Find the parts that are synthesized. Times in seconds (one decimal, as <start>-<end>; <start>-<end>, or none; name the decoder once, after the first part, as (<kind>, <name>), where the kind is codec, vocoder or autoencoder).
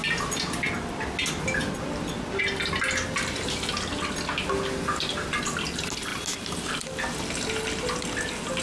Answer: none